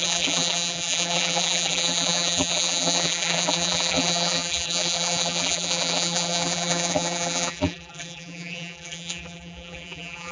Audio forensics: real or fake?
fake